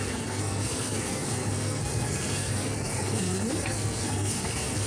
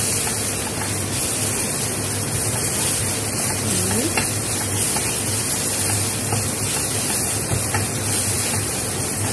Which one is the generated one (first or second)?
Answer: first